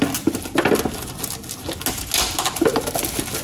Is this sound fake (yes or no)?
no